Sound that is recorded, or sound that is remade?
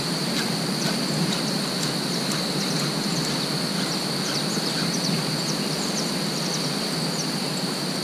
recorded